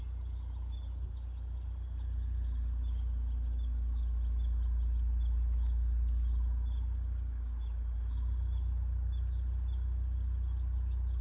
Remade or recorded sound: recorded